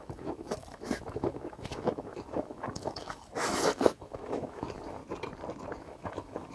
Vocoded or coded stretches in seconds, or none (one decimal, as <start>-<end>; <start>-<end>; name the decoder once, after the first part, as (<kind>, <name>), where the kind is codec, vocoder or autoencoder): 0.0-5.0 (autoencoder, DAC-VAE); 5.8-6.5